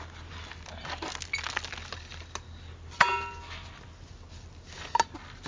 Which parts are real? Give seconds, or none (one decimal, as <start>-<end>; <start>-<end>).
0.0-5.5

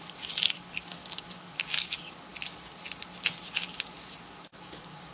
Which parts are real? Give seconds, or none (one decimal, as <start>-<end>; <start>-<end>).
2.3-4.2

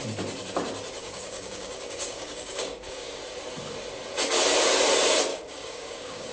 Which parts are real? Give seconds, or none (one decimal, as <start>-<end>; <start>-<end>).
0.0-1.0; 3.2-5.3

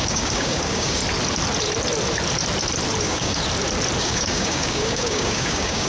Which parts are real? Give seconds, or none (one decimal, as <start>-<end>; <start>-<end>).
1.0-3.0; 3.4-4.0

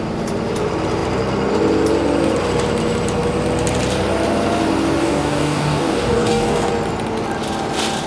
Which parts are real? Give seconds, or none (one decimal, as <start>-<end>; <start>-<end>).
0.0-5.0; 6.7-8.1

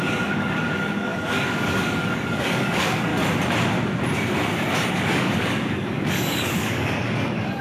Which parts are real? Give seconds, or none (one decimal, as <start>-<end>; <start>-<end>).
3.1-4.9